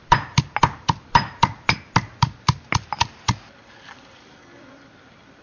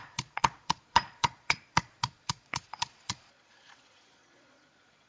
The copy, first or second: second